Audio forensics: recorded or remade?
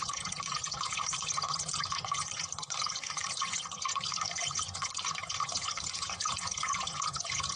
remade